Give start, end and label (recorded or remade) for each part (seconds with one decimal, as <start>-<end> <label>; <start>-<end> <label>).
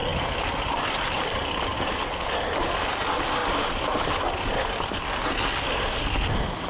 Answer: 0.0-0.8 recorded; 0.8-1.7 remade; 1.7-3.0 recorded; 3.0-3.4 remade; 3.4-5.7 recorded; 5.7-6.7 remade